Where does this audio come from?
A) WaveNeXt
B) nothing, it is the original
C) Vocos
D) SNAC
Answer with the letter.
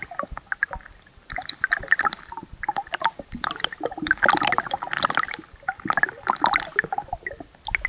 B